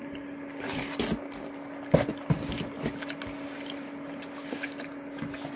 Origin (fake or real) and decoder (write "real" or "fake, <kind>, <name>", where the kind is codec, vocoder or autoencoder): real